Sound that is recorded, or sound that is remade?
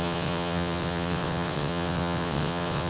remade